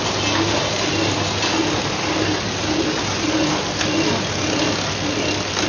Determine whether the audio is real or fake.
real